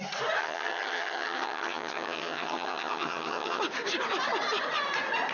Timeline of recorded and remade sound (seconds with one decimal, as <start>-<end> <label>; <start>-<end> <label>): 0.0-0.4 recorded; 0.4-3.6 remade; 3.6-5.3 recorded